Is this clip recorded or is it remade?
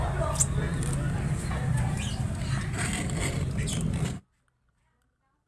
recorded